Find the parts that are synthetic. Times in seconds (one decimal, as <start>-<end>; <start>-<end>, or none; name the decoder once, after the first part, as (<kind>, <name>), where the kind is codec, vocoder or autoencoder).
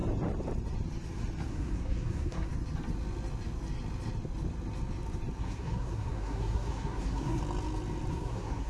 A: 1.5-2.5 (codec, SNAC); 5.4-7.4; 8.1-8.7